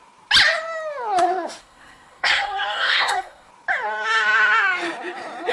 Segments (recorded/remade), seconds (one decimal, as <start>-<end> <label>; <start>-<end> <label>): 0.0-1.6 recorded; 1.6-3.5 remade; 3.5-5.5 recorded